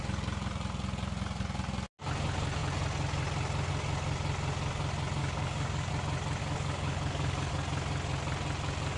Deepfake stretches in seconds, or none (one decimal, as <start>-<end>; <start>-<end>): 5.2-5.9; 6.4-7.5